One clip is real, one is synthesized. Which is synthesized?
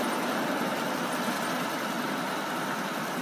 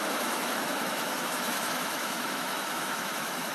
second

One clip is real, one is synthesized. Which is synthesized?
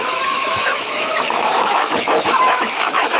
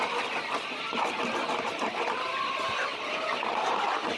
first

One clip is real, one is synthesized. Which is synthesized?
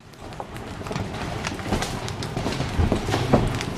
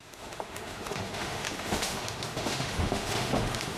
second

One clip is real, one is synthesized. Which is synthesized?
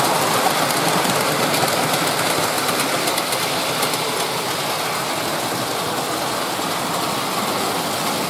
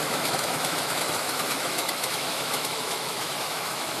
second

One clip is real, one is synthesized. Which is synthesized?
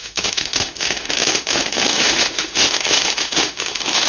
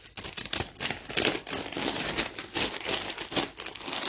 first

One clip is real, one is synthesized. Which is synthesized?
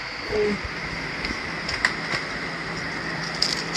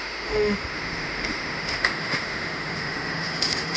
second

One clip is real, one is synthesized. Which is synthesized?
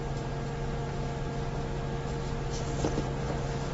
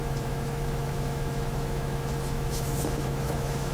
second